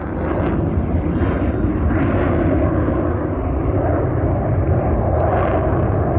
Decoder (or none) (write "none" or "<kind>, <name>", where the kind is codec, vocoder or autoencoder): none